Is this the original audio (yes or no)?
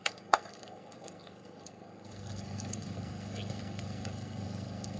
no